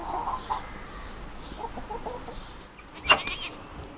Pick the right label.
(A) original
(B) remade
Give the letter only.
A